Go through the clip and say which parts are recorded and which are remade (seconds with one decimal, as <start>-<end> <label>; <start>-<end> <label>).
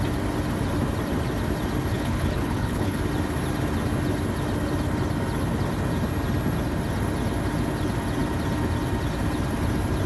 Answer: 0.0-1.9 recorded; 1.9-3.0 remade; 3.0-10.1 recorded